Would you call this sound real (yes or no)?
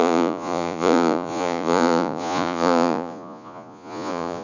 no